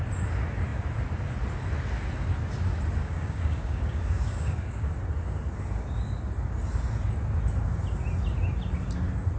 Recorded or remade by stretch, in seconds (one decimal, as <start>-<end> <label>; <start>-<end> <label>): 0.0-3.0 recorded; 3.0-4.9 remade; 4.9-9.4 recorded